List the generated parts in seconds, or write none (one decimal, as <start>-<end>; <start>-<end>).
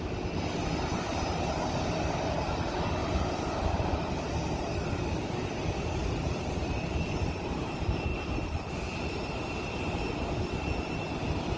3.0-4.2; 8.1-9.7